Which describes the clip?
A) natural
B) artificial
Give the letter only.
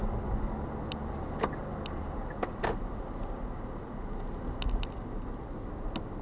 A